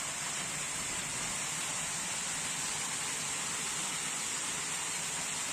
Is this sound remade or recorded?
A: remade